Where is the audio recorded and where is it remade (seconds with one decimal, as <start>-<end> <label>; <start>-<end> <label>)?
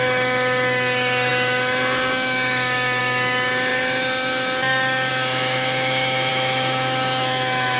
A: 0.0-7.8 remade